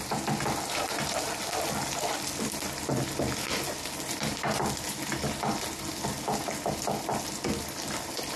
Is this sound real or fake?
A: real